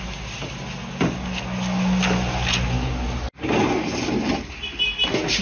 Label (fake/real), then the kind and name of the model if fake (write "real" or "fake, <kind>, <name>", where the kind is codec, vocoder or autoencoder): real